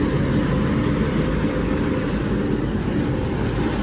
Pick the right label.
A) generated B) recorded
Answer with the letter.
B